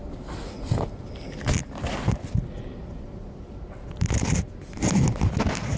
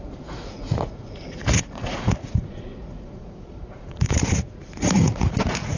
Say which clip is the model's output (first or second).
second